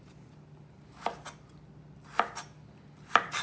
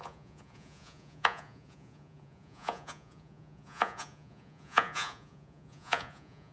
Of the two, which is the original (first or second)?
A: first